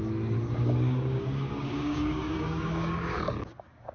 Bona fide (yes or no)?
no